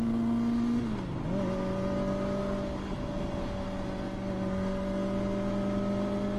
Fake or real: real